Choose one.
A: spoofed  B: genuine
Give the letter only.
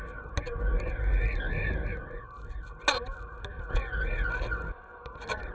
B